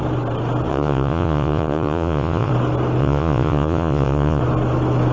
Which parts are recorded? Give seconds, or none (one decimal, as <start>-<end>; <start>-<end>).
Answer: 0.0-0.7; 2.5-3.0; 4.4-5.1